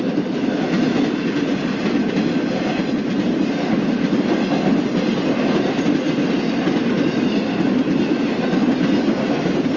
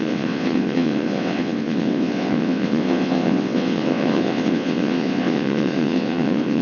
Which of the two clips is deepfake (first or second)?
second